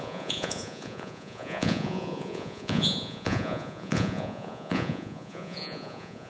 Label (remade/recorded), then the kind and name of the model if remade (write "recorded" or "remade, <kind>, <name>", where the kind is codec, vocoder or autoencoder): remade, vocoder, Vocos